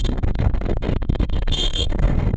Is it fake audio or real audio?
fake